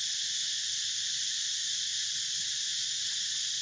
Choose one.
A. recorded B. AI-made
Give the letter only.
A